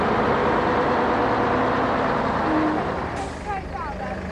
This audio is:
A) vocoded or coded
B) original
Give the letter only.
B